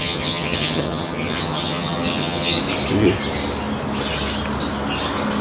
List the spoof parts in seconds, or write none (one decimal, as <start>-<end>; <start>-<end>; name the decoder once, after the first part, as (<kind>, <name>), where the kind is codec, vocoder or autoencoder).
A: 0.0-2.6 (vocoder, HiFi-GAN)